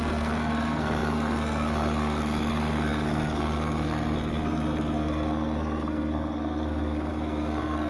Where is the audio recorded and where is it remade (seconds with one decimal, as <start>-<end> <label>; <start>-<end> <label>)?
0.0-7.9 remade